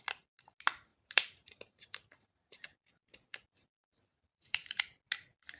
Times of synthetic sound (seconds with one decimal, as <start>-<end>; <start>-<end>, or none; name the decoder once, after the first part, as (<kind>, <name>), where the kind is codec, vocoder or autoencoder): 0.9-2.6 (vocoder, BigVGAN v2); 4.3-4.8